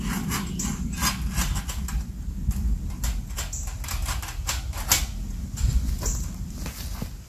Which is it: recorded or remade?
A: recorded